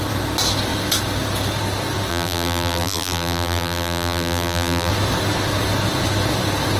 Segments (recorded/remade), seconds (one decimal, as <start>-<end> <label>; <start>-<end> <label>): 0.0-2.1 recorded; 2.1-4.9 remade; 4.9-6.8 recorded